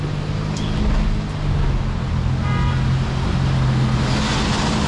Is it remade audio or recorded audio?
recorded